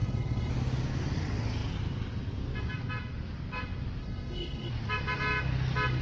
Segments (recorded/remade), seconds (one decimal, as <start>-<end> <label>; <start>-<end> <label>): 0.0-0.5 remade; 0.5-4.0 recorded; 4.0-4.7 remade; 4.7-6.0 recorded